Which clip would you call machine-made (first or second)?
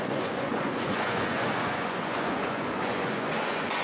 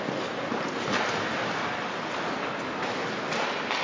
first